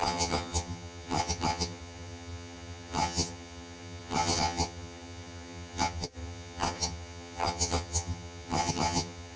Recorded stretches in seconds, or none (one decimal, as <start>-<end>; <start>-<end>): none